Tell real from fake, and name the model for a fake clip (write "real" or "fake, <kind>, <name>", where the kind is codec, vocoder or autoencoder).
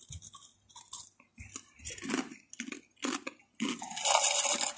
real